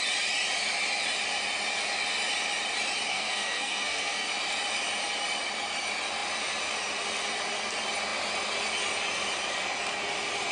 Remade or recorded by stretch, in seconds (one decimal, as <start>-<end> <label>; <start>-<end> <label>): 0.0-3.1 recorded; 3.1-4.3 remade; 4.3-10.5 recorded